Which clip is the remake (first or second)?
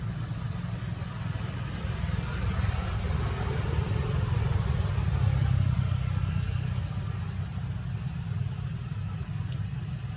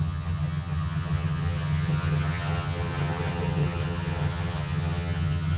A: second